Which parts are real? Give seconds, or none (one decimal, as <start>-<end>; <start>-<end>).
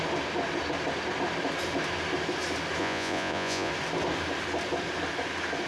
0.0-2.8; 3.7-5.7